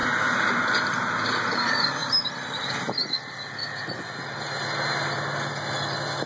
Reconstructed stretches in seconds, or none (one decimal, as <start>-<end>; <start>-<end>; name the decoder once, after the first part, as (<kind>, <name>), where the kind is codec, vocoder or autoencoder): none